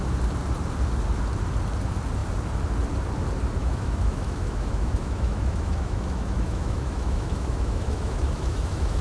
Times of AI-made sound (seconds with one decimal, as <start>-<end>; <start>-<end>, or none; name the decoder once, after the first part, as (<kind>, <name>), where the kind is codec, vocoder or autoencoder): 3.6-9.0 (autoencoder, DAC-VAE)